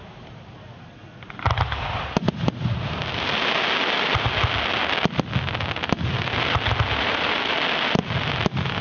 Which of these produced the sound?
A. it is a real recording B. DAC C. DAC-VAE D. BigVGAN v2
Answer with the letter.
A